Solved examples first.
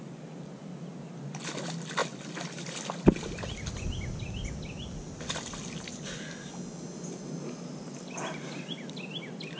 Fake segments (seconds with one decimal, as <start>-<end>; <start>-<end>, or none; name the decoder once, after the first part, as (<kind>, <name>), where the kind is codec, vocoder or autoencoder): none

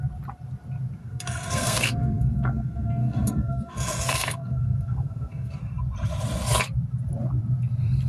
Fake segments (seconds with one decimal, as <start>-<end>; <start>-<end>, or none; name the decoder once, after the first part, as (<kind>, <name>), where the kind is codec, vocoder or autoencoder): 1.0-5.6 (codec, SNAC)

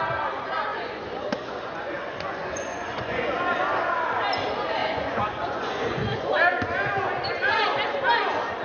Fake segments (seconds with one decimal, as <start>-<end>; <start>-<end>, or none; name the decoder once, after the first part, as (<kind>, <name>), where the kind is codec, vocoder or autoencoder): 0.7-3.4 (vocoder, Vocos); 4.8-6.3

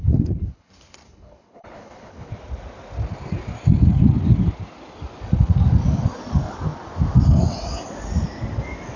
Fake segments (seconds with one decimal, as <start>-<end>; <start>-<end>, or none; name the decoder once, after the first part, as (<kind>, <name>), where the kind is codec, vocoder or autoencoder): 0.0-2.3 (codec, HILCodec)

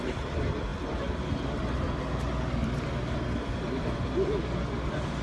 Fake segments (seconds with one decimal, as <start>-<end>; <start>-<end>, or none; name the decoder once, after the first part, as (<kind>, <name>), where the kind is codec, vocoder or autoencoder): none

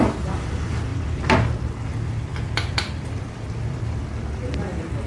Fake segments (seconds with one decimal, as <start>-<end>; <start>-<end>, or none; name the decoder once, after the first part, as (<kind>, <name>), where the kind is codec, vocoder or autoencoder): 0.9-1.7 (vocoder, BigVGAN v2); 2.3-4.1

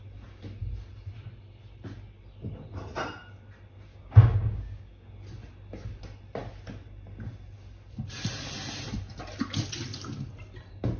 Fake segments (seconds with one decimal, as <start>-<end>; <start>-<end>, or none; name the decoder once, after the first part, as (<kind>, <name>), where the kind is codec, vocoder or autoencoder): 3.9-5.1 (codec, DAC)